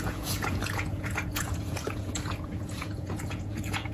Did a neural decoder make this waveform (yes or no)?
yes